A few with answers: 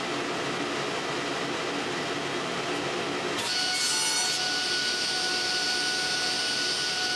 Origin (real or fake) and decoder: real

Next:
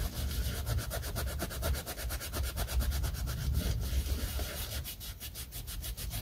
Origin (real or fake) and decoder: real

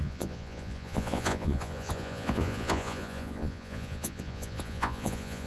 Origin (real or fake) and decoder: fake, vocoder, Vocos